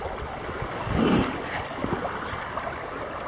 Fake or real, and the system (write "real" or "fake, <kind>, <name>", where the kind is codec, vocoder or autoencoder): real